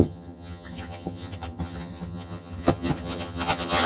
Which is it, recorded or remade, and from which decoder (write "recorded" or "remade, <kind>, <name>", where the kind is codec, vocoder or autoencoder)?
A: remade, vocoder, HiFi-GAN